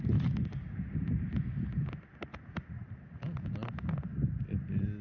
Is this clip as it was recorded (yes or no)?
yes